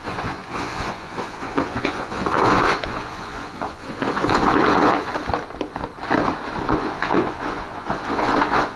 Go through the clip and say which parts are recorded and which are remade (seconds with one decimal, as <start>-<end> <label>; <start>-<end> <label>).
0.0-5.1 remade; 5.1-6.6 recorded; 6.6-8.8 remade